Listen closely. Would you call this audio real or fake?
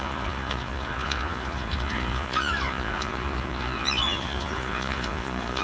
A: fake